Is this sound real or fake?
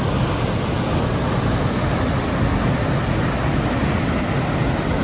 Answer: real